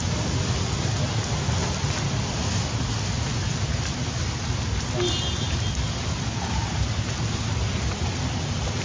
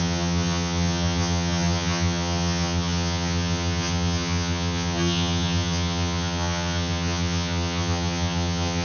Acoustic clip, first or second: first